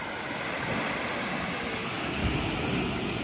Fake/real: real